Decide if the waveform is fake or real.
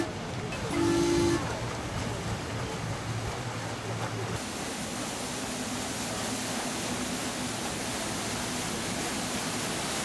real